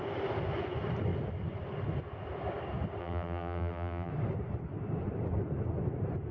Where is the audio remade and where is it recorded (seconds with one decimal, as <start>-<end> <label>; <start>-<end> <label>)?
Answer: 0.0-3.0 recorded; 3.0-4.1 remade; 4.1-6.3 recorded